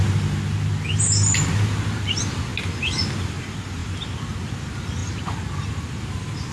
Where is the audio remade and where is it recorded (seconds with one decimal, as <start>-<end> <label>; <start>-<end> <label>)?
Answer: 0.0-6.5 recorded